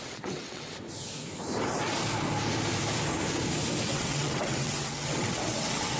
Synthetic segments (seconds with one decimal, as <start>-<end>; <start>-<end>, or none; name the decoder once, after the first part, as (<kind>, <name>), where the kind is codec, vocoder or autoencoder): 0.0-0.7 (vocoder, WaveNeXt); 3.8-6.0